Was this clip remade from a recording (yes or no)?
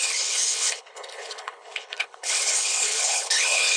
yes